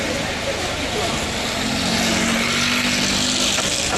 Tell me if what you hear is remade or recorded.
recorded